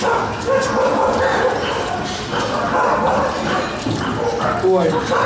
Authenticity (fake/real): real